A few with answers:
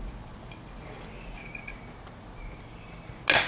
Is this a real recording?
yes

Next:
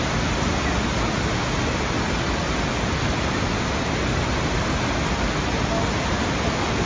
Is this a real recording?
yes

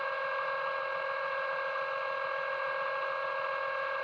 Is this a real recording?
yes